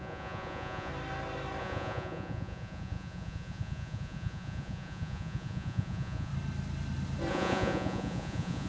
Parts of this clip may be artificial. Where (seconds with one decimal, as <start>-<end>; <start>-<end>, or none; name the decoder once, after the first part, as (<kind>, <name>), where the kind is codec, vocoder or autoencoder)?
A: 0.0-0.9 (vocoder, Vocos); 1.6-6.3; 7.3-8.7